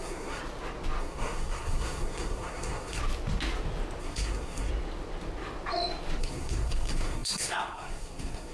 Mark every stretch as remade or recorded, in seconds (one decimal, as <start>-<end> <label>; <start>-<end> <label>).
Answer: 0.0-0.4 remade; 0.4-1.0 recorded; 1.0-3.0 remade; 3.0-4.0 recorded; 4.0-4.7 remade; 4.7-6.2 recorded; 6.2-8.5 remade